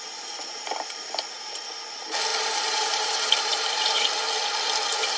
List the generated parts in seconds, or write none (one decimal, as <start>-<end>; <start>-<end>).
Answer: 2.3-4.1